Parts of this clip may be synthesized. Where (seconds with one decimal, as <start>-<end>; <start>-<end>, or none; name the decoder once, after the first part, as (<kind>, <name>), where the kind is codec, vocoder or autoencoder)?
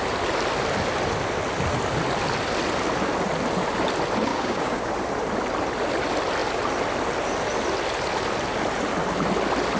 4.3-4.9 (codec, DAC)